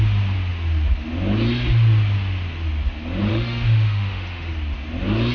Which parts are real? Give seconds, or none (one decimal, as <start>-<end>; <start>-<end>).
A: 0.0-3.3; 4.5-5.3